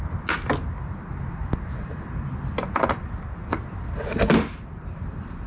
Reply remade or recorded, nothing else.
recorded